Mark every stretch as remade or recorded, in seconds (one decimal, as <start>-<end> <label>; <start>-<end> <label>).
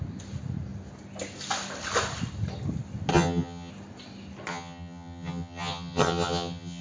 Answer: 0.0-3.1 recorded; 3.1-3.7 remade; 3.7-4.5 recorded; 4.5-6.8 remade